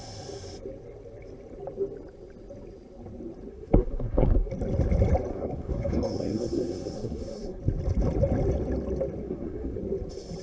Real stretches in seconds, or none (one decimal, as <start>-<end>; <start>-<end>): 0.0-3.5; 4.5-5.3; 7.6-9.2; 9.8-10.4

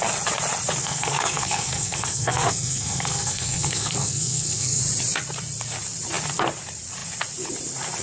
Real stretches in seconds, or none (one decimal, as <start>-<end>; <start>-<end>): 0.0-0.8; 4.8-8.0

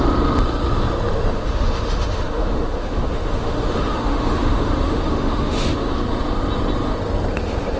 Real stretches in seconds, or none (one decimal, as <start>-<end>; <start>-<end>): 0.0-1.3; 6.0-7.8

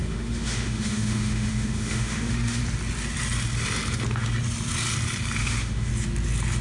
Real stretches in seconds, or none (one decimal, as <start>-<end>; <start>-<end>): 2.6-5.4; 5.9-6.6